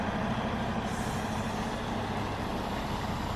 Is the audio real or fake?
real